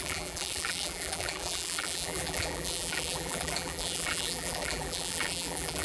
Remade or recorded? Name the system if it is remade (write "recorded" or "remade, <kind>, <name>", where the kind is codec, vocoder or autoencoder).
remade, vocoder, BigVGAN v2